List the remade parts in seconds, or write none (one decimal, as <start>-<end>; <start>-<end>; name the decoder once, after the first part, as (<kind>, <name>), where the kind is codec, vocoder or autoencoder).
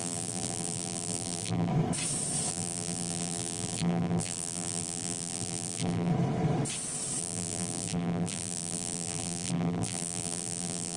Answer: 0.0-1.7 (vocoder, BigVGAN v2); 2.5-6.1; 7.2-11.0